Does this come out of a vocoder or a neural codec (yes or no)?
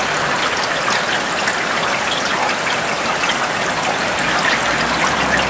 no